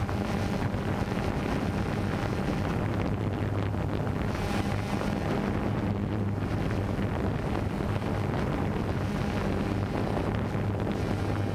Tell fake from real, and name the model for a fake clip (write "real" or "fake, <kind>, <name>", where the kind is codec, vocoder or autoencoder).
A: real